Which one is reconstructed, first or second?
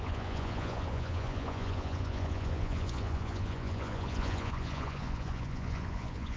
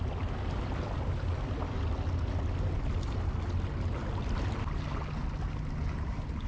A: first